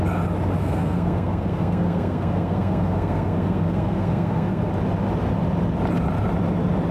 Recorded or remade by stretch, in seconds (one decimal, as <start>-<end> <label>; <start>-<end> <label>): 0.0-0.6 recorded; 0.6-4.7 remade; 4.7-6.9 recorded